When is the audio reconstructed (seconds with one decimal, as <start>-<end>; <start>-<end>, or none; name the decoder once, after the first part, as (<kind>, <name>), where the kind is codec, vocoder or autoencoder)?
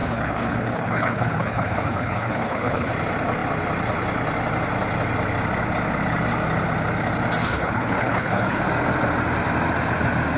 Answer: 0.0-2.9 (codec, HILCodec); 7.4-8.6